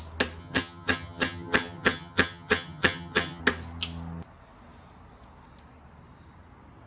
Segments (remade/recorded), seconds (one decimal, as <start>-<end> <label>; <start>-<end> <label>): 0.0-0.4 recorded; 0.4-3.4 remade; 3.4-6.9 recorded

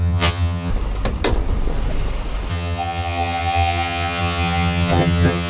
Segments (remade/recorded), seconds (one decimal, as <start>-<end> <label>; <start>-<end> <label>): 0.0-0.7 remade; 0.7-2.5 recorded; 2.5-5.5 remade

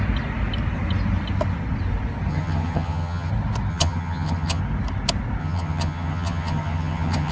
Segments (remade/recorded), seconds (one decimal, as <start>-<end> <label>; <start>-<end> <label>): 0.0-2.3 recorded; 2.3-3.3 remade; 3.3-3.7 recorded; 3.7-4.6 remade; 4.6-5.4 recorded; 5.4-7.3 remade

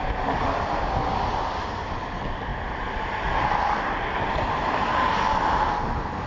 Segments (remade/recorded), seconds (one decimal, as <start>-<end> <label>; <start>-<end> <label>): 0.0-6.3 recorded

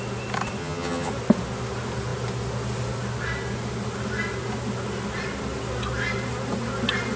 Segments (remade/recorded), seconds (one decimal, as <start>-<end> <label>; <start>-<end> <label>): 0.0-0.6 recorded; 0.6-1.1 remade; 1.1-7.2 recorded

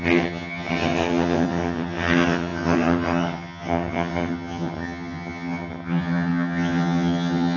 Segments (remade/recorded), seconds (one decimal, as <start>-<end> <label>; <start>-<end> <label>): 0.0-7.6 remade

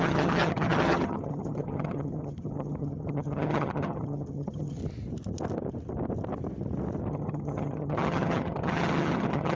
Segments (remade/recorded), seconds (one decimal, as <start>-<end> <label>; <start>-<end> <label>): 0.0-4.8 remade; 4.8-7.1 recorded; 7.1-9.5 remade